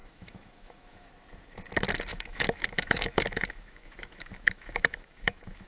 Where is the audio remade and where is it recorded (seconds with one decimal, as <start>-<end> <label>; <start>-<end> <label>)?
0.0-1.1 remade; 1.1-2.1 recorded; 2.1-5.7 remade